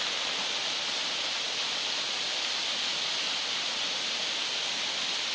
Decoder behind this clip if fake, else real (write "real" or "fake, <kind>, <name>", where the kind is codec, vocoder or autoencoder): real